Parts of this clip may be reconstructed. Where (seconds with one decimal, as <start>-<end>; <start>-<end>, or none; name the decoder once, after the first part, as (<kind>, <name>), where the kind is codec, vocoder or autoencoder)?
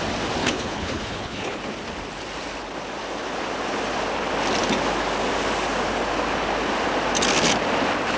0.4-1.6 (codec, HILCodec)